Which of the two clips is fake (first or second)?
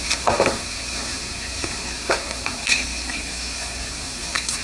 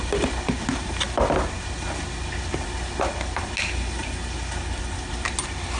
first